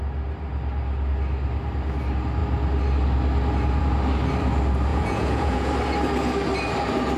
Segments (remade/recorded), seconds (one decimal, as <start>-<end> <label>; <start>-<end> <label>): 0.0-4.9 recorded; 4.9-5.7 remade; 5.7-7.2 recorded